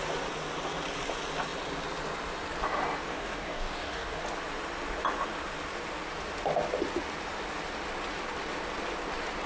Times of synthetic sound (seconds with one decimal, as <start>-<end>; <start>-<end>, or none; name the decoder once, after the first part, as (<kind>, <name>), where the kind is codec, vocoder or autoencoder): 3.1-4.2 (codec, DAC)